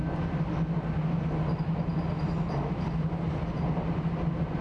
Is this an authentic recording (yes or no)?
yes